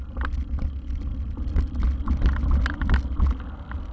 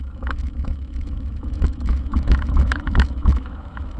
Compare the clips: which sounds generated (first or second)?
second